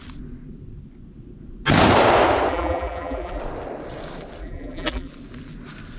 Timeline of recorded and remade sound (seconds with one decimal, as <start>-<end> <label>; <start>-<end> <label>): 0.0-2.5 recorded; 2.5-3.4 remade; 3.4-4.4 recorded; 4.4-5.1 remade; 5.1-6.0 recorded